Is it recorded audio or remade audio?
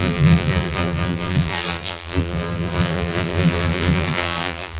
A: remade